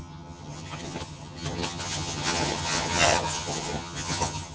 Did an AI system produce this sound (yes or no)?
yes